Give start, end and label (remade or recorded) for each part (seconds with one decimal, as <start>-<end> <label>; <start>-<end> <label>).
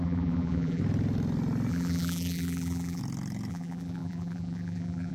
0.0-0.8 remade; 0.8-1.7 recorded; 1.7-3.0 remade; 3.0-3.5 recorded; 3.5-5.1 remade